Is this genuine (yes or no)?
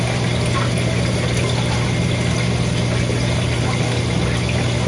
yes